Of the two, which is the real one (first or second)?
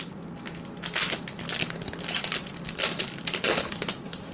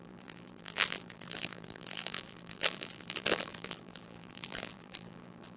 first